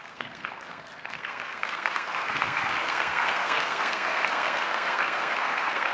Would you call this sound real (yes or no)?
no